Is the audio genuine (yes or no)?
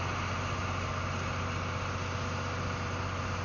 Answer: yes